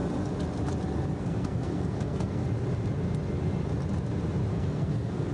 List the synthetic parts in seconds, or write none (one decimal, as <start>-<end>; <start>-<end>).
1.2-2.4; 4.5-5.3